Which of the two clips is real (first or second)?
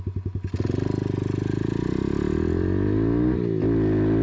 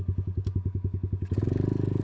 first